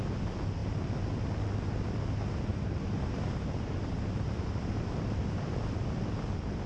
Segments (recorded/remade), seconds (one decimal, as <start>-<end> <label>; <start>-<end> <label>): 0.0-2.5 recorded; 2.5-4.9 remade; 4.9-6.7 recorded